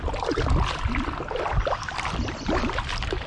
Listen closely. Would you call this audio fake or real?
real